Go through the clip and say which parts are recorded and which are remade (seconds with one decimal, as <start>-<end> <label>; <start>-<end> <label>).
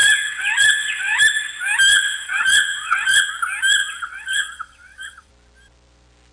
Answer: 0.0-1.2 remade; 1.2-1.9 recorded; 1.9-3.3 remade; 3.3-3.8 recorded; 3.8-5.3 remade; 5.3-6.3 recorded